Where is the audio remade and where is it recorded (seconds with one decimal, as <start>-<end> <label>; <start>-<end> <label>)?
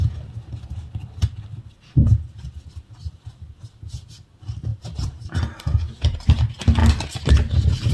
0.0-4.7 recorded; 4.7-5.4 remade; 5.4-7.9 recorded